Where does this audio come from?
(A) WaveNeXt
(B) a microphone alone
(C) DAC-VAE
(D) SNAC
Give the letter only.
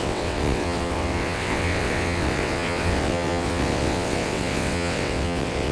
A